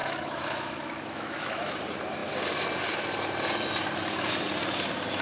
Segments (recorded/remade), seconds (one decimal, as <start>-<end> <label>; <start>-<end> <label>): 0.0-1.8 remade; 1.8-5.2 recorded

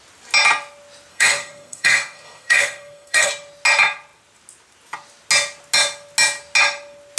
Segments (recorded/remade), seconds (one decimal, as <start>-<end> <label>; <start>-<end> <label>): 0.0-1.1 recorded; 1.1-3.3 remade; 3.3-7.2 recorded